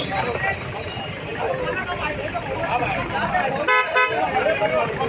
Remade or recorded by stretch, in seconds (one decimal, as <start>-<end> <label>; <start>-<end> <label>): 0.0-5.1 recorded